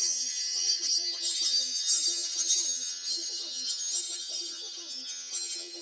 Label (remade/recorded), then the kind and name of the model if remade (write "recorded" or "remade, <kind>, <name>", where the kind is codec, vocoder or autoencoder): remade, vocoder, HiFi-GAN